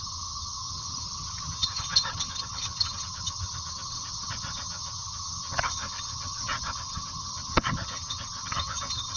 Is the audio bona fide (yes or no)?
no